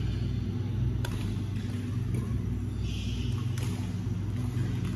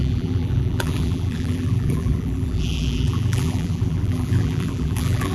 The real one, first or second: first